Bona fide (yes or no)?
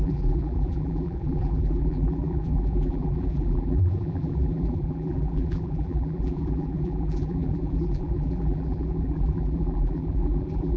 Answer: no